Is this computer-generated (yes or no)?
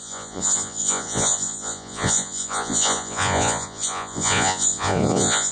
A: yes